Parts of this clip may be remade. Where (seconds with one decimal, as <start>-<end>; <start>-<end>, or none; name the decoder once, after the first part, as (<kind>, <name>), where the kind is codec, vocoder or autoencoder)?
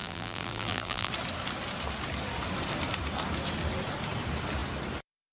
0.0-1.1 (vocoder, BigVGAN v2)